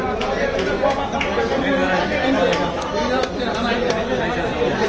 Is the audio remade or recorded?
recorded